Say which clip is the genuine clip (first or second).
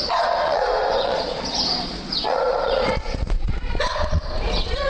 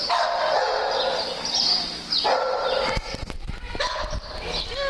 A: second